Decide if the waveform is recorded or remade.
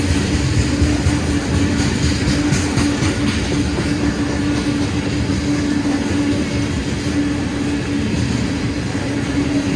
recorded